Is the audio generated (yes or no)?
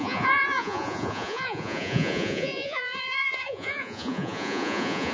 yes